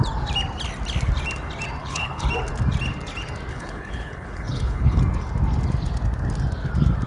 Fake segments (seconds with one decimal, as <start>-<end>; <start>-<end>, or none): 1.8-2.3; 3.5-5.0